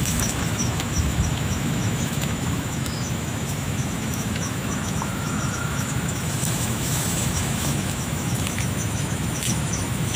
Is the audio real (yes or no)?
no